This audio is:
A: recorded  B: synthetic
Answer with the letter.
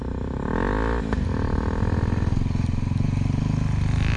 A